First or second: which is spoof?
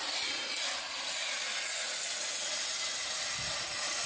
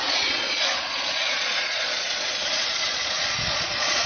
second